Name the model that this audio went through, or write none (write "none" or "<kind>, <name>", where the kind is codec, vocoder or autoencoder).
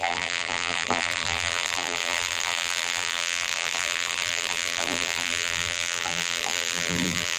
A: vocoder, BigVGAN v2